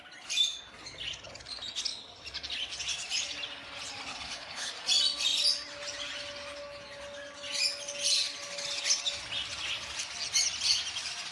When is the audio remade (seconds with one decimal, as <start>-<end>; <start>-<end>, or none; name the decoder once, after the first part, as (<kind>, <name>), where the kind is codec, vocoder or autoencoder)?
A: 4.1-4.7 (codec, HILCodec)